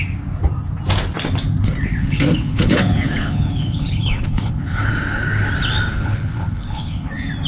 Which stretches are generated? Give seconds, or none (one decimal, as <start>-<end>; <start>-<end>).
2.0-4.9; 5.9-7.1